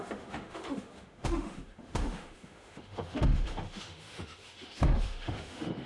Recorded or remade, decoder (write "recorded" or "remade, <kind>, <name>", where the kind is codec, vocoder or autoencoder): remade, autoencoder, DAC-VAE